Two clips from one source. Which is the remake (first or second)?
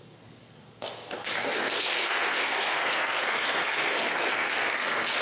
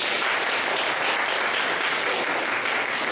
first